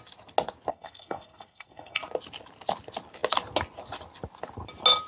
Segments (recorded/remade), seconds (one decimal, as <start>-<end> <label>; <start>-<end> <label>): 0.0-0.7 recorded; 0.7-2.0 remade; 2.0-5.1 recorded